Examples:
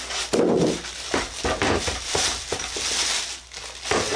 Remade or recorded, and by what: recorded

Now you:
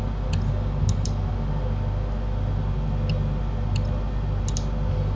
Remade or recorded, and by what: recorded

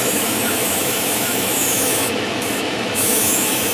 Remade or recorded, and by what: remade, autoencoder, DAC-VAE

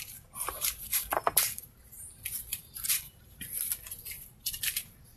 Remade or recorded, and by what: recorded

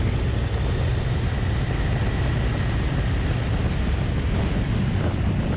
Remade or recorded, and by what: recorded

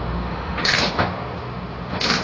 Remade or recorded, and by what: remade, autoencoder, DAC-VAE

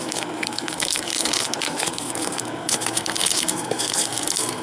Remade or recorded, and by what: remade, codec, SNAC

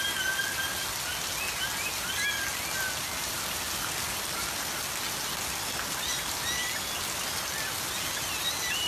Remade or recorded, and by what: recorded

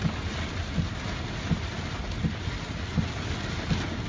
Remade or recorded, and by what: recorded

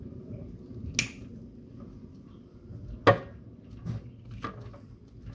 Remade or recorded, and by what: recorded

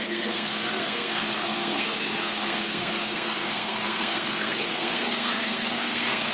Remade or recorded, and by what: remade, codec, SNAC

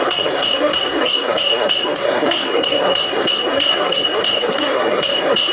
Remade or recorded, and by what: remade, codec, SNAC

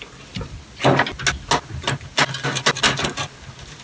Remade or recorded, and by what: recorded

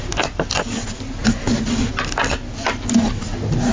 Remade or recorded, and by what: recorded